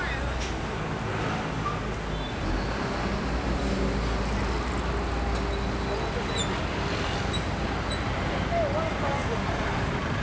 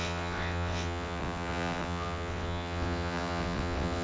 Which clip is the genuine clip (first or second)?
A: first